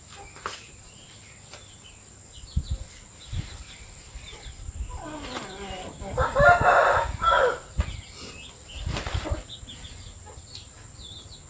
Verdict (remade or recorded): recorded